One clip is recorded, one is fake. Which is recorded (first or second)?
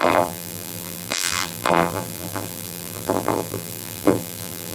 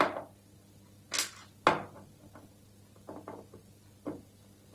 second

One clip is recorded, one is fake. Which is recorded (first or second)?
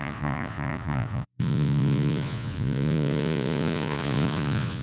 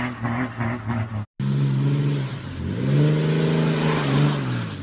second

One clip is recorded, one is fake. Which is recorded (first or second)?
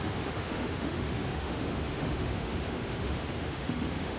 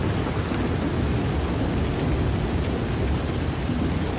second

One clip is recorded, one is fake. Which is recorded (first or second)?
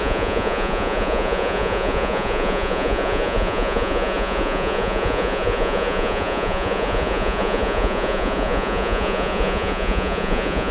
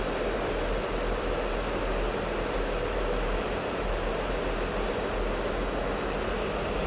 second